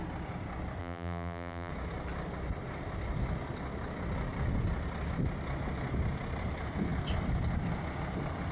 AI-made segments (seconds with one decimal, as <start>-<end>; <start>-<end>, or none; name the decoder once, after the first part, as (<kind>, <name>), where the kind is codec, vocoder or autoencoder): 0.8-1.7 (vocoder, BigVGAN v2)